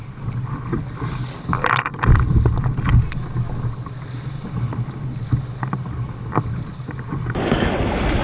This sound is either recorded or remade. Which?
recorded